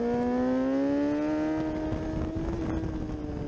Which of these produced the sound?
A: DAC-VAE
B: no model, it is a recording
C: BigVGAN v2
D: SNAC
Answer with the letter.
B